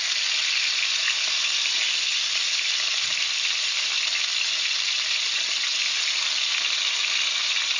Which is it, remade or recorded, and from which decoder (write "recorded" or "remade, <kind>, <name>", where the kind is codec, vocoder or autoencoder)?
recorded